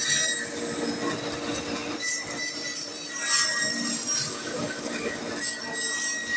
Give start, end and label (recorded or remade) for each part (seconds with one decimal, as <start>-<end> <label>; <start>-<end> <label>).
0.0-4.3 recorded; 4.3-5.2 remade; 5.2-6.4 recorded